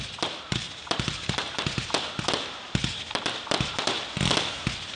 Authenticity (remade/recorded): remade